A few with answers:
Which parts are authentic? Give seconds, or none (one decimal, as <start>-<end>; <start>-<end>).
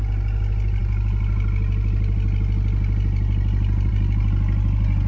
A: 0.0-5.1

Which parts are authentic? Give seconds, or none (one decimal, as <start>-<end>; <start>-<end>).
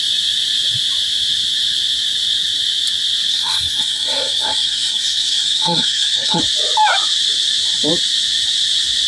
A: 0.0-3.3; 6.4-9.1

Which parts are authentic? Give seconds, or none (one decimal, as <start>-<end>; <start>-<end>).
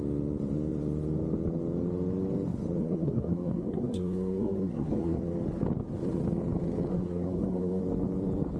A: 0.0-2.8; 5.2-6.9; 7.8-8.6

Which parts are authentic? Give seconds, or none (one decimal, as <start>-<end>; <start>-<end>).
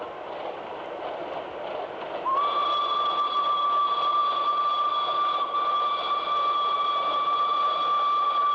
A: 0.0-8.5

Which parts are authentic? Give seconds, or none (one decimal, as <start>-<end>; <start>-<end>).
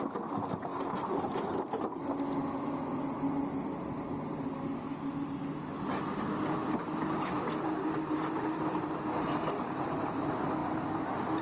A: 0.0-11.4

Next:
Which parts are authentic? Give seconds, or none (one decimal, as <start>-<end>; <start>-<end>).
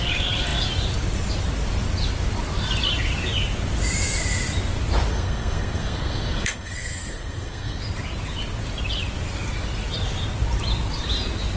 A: 0.0-5.1; 7.8-11.6